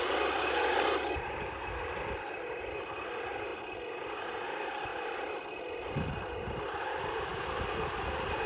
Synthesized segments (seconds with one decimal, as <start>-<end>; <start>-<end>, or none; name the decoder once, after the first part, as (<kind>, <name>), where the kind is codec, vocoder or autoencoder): 4.9-6.1 (vocoder, BigVGAN v2)